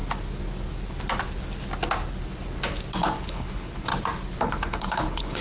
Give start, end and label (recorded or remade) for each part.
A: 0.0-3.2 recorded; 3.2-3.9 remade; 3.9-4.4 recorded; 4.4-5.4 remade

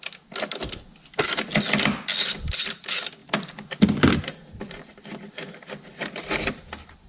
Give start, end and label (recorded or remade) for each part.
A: 0.0-7.1 recorded

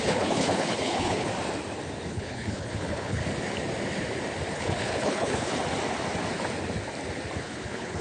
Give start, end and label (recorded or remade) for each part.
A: 0.0-1.3 remade; 1.3-2.1 recorded; 2.1-3.2 remade; 3.2-4.5 recorded; 4.5-5.5 remade; 5.5-7.4 recorded; 7.4-8.0 remade

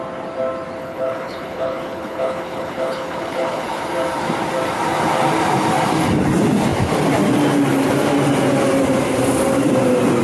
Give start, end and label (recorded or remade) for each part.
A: 0.0-0.8 recorded; 0.8-3.8 remade; 3.8-10.2 recorded

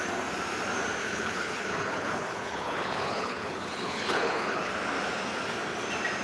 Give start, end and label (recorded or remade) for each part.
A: 0.0-1.0 recorded; 1.0-4.7 remade; 4.7-6.2 recorded